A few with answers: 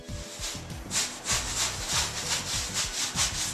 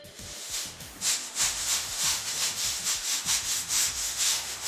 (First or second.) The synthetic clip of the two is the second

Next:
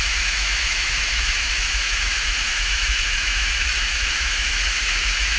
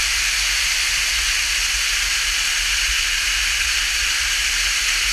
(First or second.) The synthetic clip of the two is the first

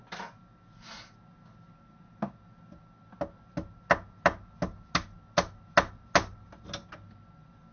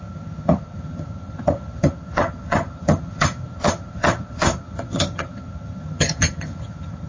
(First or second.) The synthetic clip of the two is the second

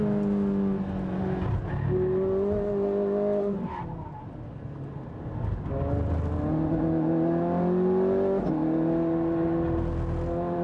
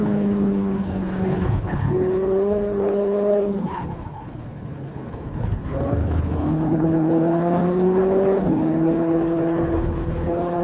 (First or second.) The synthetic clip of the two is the second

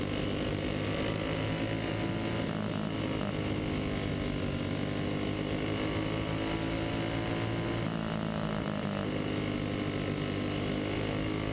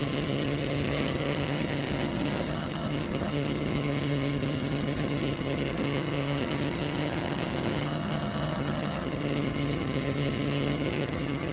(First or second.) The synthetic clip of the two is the second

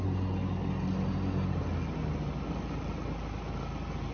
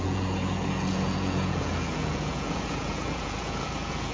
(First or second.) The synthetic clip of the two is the second